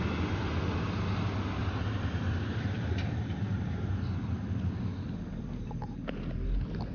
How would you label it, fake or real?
real